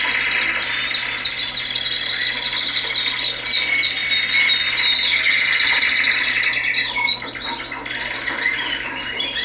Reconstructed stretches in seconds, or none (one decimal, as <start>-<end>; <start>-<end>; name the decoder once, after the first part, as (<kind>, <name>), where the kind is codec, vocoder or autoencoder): none